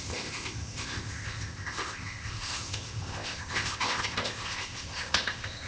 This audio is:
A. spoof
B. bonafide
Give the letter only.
A